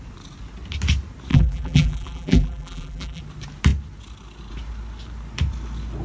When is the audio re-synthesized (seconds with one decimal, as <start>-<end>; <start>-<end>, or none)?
1.3-3.2